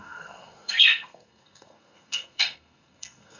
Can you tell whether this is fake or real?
fake